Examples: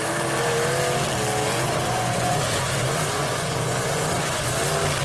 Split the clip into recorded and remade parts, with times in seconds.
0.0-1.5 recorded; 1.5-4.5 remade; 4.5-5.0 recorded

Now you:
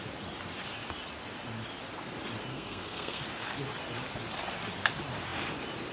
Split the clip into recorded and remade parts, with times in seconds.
0.0-2.5 recorded; 2.5-3.2 remade; 3.2-5.9 recorded

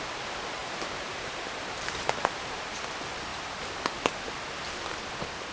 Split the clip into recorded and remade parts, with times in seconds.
0.0-0.6 recorded; 0.6-2.8 remade; 2.8-3.3 recorded; 3.3-3.9 remade; 3.9-5.5 recorded

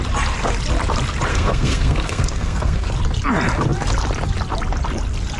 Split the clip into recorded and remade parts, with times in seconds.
0.0-1.3 recorded; 1.3-2.9 remade; 2.9-5.4 recorded

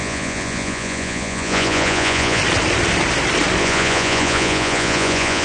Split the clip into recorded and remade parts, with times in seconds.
0.0-2.4 remade; 2.4-3.6 recorded; 3.6-5.4 remade

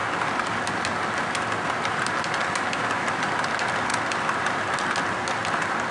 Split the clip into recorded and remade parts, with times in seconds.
0.0-5.9 recorded